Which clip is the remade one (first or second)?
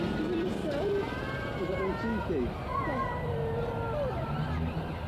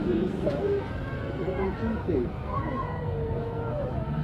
second